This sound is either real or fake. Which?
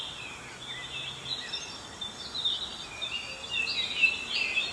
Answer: real